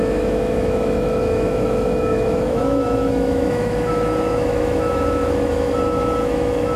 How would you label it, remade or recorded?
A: remade